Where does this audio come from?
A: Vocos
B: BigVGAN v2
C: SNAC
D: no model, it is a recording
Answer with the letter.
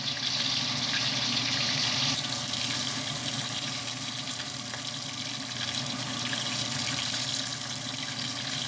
D